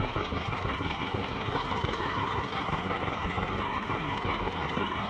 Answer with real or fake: fake